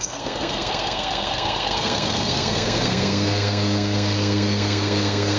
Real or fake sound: fake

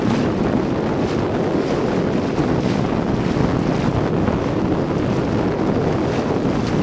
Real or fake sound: real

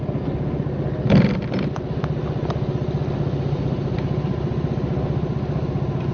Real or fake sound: real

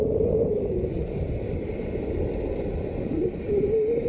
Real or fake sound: real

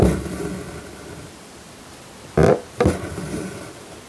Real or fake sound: real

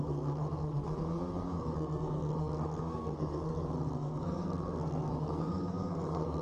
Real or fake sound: fake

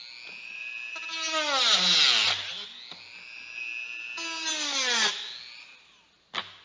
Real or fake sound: real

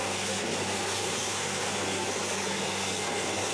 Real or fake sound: fake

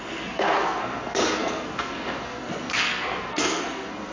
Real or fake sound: fake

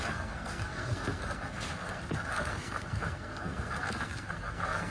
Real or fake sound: fake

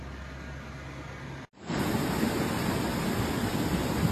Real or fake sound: real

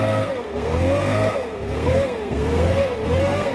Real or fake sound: fake